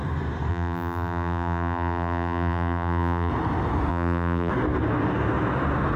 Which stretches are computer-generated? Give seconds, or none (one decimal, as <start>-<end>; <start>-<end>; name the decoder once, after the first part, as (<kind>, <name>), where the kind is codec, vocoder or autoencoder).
0.5-3.3 (vocoder, BigVGAN v2); 3.9-4.5